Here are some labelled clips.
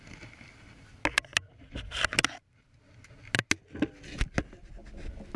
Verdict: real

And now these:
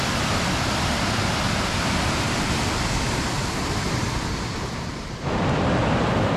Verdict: real